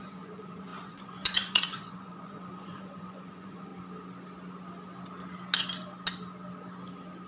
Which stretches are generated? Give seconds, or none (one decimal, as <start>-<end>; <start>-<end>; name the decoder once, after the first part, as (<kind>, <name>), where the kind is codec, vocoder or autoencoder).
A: 0.0-3.7 (vocoder, Vocos)